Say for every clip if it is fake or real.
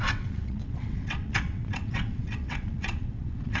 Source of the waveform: fake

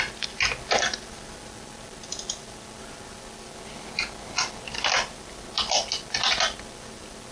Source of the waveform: real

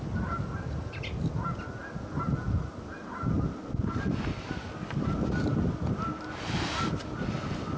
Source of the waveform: real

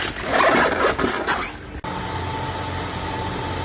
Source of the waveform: real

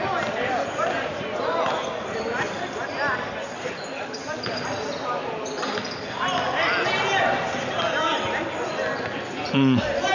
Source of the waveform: real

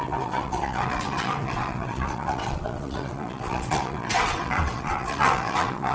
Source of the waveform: fake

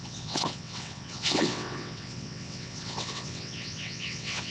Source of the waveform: fake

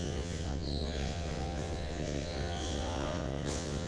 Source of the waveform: fake